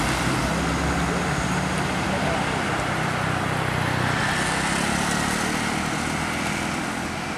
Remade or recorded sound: recorded